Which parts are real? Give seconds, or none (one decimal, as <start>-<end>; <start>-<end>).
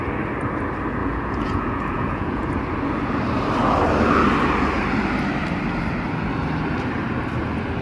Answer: 0.0-1.0; 2.5-7.8